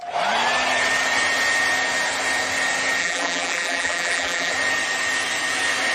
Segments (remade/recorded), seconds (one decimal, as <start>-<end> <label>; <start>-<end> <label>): 0.0-3.0 recorded; 3.0-4.5 remade; 4.5-5.9 recorded

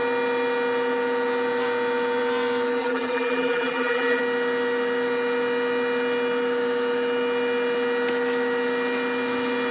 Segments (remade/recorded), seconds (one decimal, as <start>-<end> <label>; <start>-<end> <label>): 0.0-2.8 recorded; 2.8-4.2 remade; 4.2-9.7 recorded

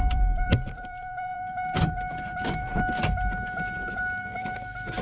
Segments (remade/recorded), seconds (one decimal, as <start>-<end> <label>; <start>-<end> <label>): 0.0-2.7 remade; 2.7-4.2 recorded; 4.2-5.0 remade